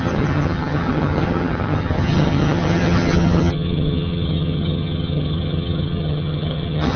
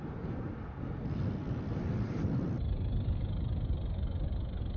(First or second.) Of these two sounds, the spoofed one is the first